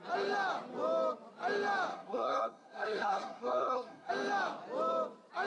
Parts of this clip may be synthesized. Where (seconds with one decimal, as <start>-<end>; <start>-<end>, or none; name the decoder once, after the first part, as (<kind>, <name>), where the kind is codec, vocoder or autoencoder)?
1.9-4.1 (codec, SNAC)